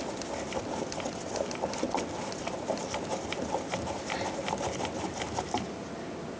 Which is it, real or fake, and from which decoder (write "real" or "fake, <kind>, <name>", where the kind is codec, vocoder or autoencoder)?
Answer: real